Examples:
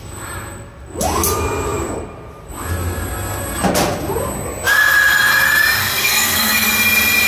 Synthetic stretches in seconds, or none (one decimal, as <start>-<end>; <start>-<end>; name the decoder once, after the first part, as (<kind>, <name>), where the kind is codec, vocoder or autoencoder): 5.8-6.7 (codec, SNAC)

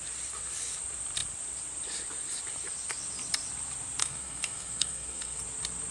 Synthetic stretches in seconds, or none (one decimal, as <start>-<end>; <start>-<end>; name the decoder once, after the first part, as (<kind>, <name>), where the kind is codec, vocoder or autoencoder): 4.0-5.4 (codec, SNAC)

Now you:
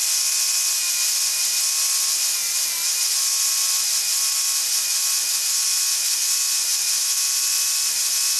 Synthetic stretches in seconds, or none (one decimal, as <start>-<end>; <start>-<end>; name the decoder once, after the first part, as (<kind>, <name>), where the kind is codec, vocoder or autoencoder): 6.7-8.0 (vocoder, BigVGAN v2)